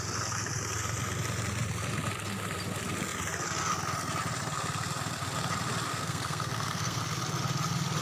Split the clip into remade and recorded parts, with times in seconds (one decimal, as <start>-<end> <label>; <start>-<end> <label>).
0.0-5.9 recorded; 5.9-7.0 remade; 7.0-8.0 recorded